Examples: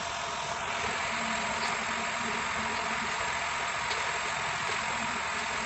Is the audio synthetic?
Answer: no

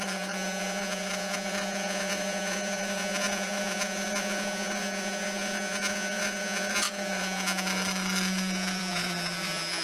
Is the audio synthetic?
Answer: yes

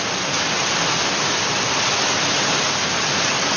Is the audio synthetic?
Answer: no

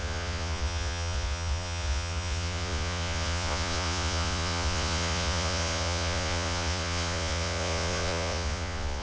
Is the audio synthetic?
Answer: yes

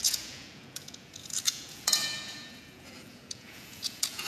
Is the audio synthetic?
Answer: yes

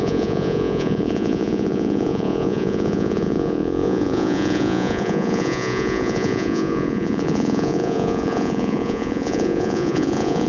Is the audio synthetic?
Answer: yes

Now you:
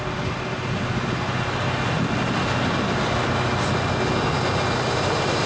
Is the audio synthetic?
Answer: no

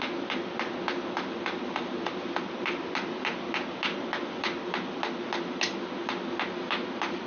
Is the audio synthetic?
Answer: no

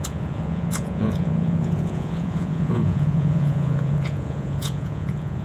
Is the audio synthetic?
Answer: yes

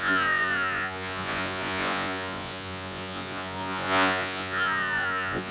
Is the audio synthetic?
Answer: yes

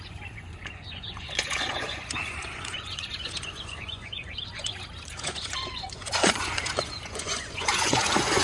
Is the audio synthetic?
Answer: yes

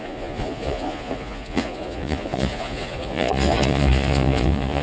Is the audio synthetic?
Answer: yes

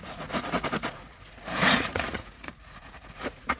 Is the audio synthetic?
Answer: yes